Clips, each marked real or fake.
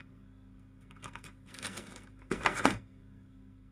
fake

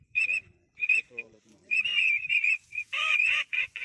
fake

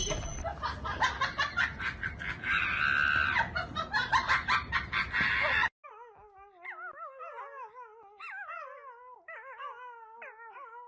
real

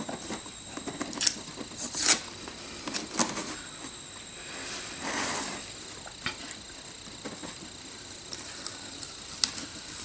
real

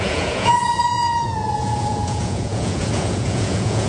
fake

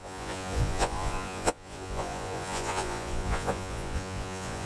fake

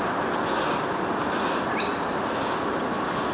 real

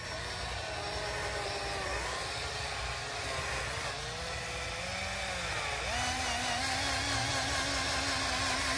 real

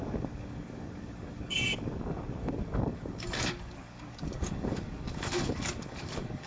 fake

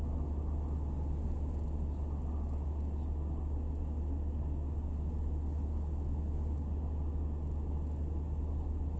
real